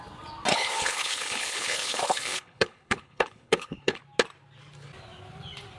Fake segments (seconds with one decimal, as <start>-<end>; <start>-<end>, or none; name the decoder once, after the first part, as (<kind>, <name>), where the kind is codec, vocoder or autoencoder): 0.5-4.0 (codec, HILCodec)

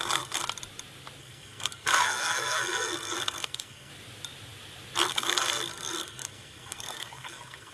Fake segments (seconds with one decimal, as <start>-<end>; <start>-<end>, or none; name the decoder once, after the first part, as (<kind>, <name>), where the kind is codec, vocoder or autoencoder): 0.0-0.4 (codec, SNAC); 1.2-3.9; 5.1-7.7

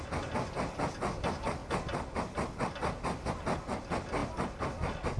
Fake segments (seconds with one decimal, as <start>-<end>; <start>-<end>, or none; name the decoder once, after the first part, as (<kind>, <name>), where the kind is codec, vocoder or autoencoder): none

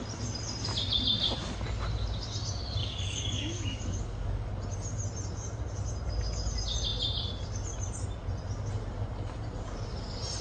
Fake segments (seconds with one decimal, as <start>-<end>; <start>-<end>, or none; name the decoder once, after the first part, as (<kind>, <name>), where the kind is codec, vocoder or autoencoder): 2.8-4.5 (codec, DAC)